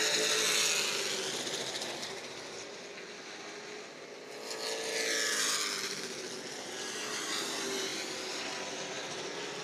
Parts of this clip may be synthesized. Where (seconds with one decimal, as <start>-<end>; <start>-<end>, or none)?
none